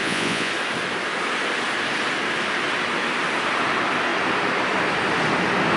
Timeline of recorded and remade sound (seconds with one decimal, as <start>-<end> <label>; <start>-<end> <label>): 0.0-0.5 remade; 0.5-5.8 recorded